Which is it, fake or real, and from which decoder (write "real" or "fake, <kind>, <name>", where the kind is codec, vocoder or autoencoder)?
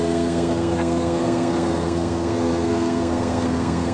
fake, codec, SNAC